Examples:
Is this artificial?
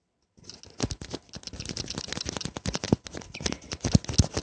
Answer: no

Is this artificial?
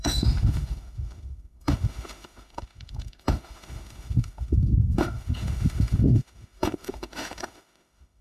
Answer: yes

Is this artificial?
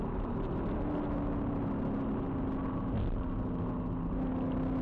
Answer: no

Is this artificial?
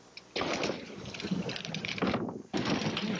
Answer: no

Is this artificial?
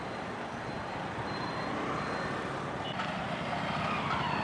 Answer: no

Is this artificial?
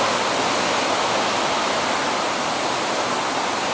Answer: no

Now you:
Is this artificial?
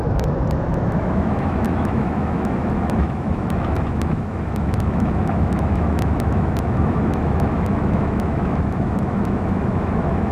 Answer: yes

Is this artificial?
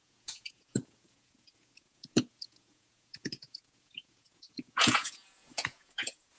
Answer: yes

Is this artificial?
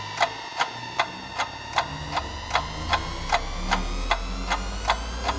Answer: no